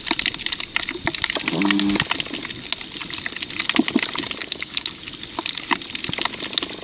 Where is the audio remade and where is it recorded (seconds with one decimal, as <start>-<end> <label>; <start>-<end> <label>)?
0.0-4.4 recorded; 4.4-5.0 remade; 5.0-6.8 recorded